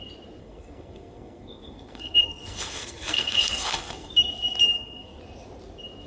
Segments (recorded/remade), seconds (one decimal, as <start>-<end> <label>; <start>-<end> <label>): 0.0-0.4 recorded; 0.4-4.1 remade; 4.1-4.6 recorded; 4.6-5.2 remade; 5.2-6.1 recorded